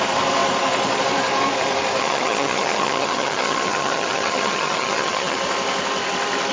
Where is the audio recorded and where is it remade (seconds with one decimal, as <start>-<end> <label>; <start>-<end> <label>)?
0.0-2.0 recorded; 2.0-5.4 remade; 5.4-6.5 recorded